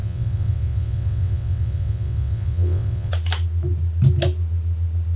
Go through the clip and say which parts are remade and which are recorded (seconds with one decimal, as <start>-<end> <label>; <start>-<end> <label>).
0.0-3.1 remade; 3.1-5.2 recorded